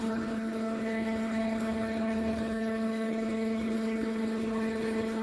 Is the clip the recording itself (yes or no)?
no